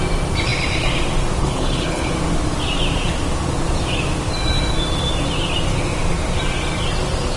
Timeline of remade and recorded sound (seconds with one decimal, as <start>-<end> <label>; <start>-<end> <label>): 0.0-1.4 recorded; 1.4-2.1 remade; 2.1-7.4 recorded